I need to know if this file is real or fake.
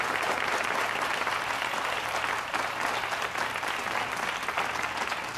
real